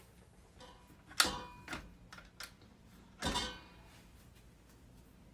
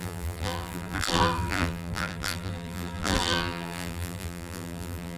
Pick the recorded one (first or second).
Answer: first